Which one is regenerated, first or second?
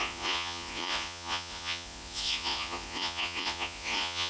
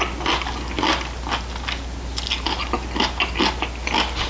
first